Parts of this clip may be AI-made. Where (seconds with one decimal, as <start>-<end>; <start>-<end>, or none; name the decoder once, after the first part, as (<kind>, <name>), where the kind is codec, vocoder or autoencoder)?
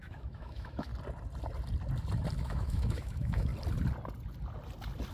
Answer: 0.0-0.9 (autoencoder, DAC-VAE); 2.4-3.5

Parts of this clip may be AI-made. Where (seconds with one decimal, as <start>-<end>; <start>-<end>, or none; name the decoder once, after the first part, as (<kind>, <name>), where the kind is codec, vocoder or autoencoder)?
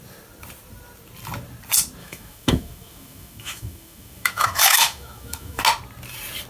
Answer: 2.0-5.6 (autoencoder, DAC-VAE)